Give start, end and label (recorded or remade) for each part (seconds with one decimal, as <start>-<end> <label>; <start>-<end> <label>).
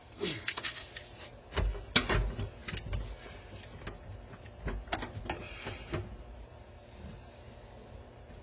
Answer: 0.0-0.9 remade; 0.9-8.4 recorded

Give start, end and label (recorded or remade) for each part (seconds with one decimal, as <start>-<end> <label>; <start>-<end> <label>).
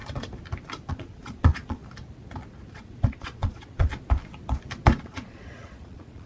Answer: 0.0-0.9 recorded; 0.9-1.8 remade; 1.8-2.7 recorded; 2.7-3.9 remade; 3.9-5.0 recorded; 5.0-6.3 remade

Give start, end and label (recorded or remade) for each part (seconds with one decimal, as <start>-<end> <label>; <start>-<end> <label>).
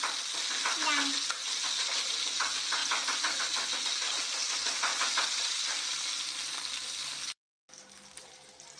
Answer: 0.0-1.4 recorded; 1.4-2.4 remade; 2.4-4.9 recorded; 4.9-7.4 remade; 7.4-8.8 recorded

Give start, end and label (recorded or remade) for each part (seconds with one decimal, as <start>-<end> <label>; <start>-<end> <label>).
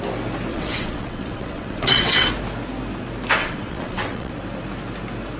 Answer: 0.0-0.5 recorded; 0.5-2.3 remade; 2.3-3.4 recorded; 3.4-4.3 remade; 4.3-5.4 recorded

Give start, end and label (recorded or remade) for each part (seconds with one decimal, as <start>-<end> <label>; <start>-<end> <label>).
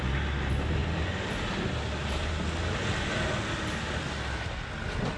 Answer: 0.0-5.2 recorded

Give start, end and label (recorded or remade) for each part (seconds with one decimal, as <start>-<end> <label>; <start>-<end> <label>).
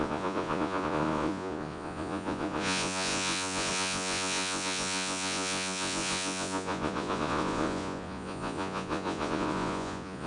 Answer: 0.0-10.3 remade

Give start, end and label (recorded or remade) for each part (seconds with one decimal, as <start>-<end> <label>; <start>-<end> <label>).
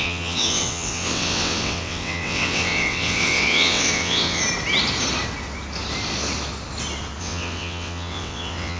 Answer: 0.0-4.4 remade; 4.4-7.2 recorded; 7.2-8.8 remade